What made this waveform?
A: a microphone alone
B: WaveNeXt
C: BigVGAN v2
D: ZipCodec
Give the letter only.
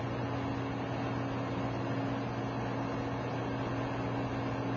A